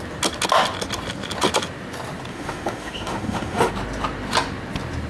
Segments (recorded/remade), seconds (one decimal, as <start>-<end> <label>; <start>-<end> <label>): 0.0-2.3 recorded; 2.3-3.7 remade; 3.7-5.1 recorded